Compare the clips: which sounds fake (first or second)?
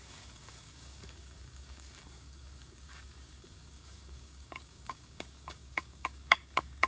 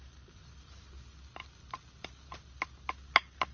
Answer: first